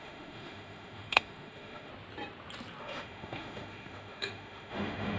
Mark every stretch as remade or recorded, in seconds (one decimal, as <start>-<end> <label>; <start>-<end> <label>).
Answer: 0.0-1.9 remade; 1.9-2.8 recorded; 2.8-5.2 remade